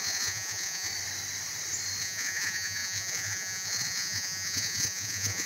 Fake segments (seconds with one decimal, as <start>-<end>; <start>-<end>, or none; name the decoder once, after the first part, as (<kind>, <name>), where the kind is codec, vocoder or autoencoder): 0.0-0.9 (vocoder, Vocos); 2.0-5.5